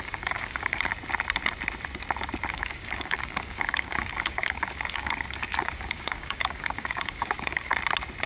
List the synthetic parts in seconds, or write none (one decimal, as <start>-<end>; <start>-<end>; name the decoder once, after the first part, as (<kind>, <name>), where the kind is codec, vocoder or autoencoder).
0.0-0.9 (codec, DAC); 2.5-7.7